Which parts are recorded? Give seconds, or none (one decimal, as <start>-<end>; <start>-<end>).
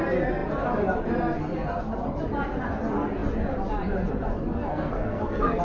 0.0-4.7